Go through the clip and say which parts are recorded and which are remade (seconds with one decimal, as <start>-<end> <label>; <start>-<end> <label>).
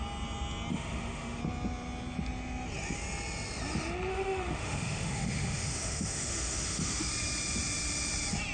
0.0-0.7 recorded; 0.7-1.4 remade; 1.4-4.1 recorded; 4.1-7.1 remade; 7.1-8.5 recorded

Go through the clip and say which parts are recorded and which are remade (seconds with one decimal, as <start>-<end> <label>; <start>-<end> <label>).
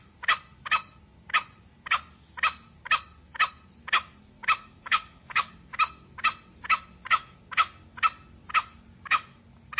0.0-4.6 recorded; 4.6-5.5 remade; 5.5-9.8 recorded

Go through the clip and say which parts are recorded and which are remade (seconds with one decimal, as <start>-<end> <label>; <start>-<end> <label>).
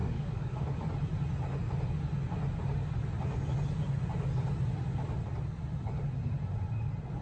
0.0-0.8 remade; 0.8-7.2 recorded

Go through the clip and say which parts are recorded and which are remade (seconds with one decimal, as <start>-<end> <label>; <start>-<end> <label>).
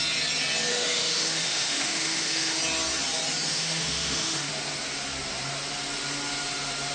0.0-0.7 recorded; 0.7-2.6 remade; 2.6-3.5 recorded; 3.5-4.5 remade; 4.5-6.9 recorded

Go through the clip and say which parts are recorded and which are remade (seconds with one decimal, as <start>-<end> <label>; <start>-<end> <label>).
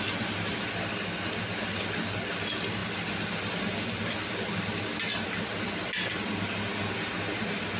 0.0-2.8 recorded; 2.8-3.4 remade; 3.4-7.8 recorded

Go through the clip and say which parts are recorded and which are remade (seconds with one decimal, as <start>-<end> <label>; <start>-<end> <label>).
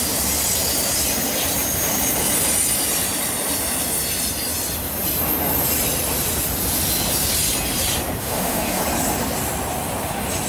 0.0-8.2 recorded; 8.2-8.8 remade; 8.8-10.5 recorded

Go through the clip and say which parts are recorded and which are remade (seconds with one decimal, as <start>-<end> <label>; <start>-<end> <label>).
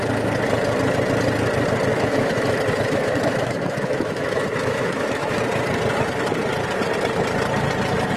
0.0-1.9 recorded; 1.9-5.4 remade; 5.4-8.2 recorded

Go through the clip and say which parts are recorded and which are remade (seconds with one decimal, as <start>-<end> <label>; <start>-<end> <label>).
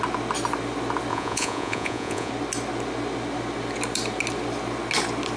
0.0-1.1 recorded; 1.1-2.3 remade; 2.3-5.4 recorded